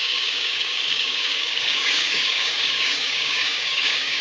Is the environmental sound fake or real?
fake